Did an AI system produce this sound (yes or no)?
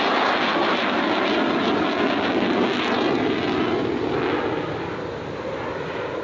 no